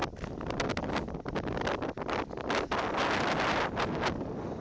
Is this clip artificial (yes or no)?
no